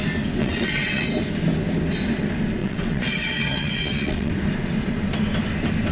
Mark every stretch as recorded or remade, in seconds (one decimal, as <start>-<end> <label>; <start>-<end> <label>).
0.0-0.4 recorded; 0.4-1.1 remade; 1.1-2.6 recorded; 2.6-4.3 remade; 4.3-5.9 recorded